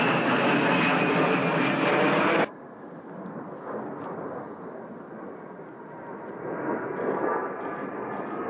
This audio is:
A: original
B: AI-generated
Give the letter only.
A